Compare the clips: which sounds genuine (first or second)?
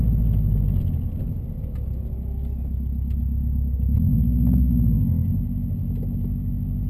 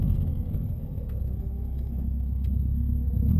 first